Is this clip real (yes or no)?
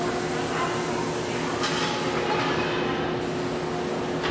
yes